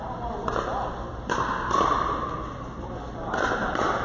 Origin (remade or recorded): remade